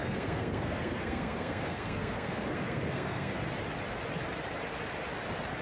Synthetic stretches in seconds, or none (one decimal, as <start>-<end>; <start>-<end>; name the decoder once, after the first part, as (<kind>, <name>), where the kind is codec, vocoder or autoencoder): 0.0-3.4 (codec, SNAC)